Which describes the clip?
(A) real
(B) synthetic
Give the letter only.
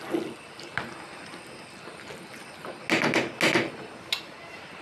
A